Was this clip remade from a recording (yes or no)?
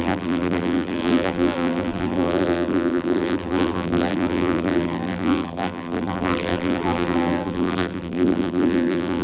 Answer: yes